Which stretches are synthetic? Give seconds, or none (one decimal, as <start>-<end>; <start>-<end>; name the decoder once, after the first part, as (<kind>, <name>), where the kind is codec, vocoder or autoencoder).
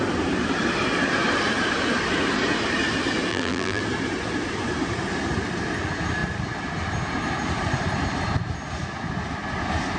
3.3-3.8 (vocoder, BigVGAN v2)